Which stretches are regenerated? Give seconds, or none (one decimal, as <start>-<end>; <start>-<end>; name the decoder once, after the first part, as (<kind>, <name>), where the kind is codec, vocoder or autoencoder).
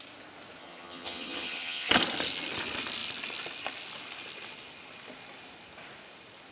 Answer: 0.6-1.9 (vocoder, HiFi-GAN)